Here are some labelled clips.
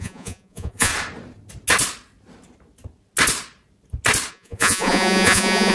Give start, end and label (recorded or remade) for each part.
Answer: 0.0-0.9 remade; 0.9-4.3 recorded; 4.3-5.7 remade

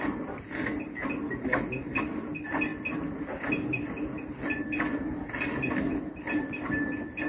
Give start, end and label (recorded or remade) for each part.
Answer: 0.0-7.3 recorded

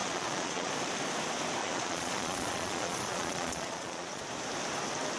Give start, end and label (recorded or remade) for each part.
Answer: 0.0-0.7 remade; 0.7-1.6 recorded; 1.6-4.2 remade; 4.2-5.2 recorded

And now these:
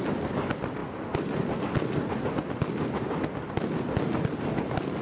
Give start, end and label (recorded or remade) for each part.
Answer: 0.0-5.0 recorded

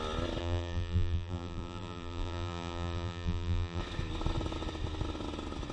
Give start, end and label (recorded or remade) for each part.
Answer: 0.0-0.4 recorded; 0.4-3.8 remade; 3.8-5.7 recorded

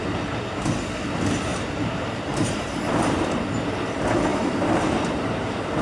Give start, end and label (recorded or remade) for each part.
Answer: 0.0-1.5 recorded; 1.5-3.5 remade; 3.5-4.3 recorded; 4.3-5.8 remade

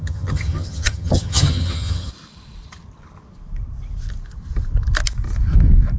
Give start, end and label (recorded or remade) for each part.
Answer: 0.0-2.1 remade; 2.1-6.0 recorded

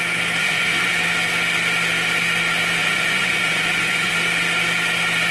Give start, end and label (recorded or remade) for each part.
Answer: 0.0-0.4 recorded; 0.4-0.9 remade; 0.9-2.8 recorded; 2.8-4.1 remade; 4.1-5.3 recorded